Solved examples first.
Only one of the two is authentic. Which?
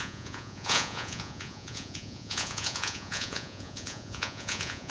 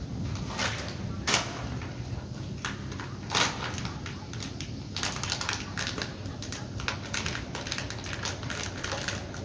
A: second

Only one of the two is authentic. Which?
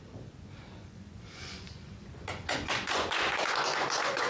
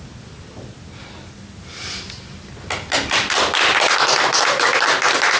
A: second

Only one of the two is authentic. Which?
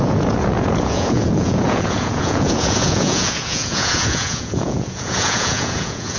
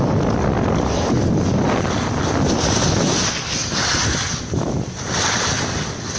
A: second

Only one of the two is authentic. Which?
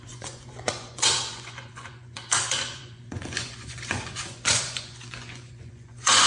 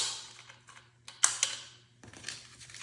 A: second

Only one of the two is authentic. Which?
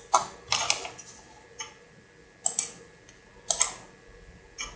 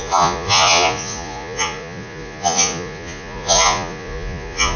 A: first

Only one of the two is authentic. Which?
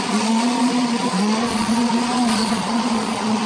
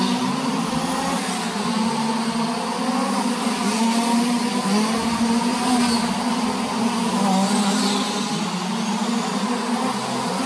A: second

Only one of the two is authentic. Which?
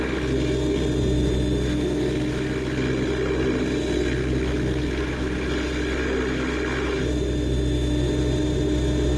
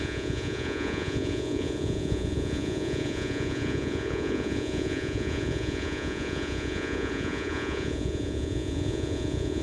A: first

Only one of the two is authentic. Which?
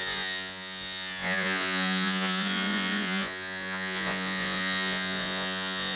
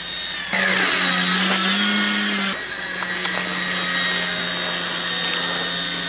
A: second